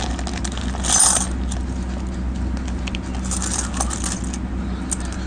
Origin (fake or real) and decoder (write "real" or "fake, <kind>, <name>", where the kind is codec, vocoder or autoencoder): real